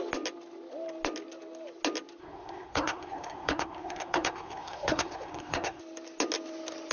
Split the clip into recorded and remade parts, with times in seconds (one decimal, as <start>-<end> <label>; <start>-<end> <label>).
0.0-2.2 recorded; 2.2-5.8 remade; 5.8-6.9 recorded